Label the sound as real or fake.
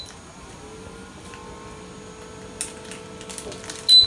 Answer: real